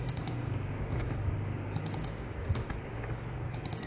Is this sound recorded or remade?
remade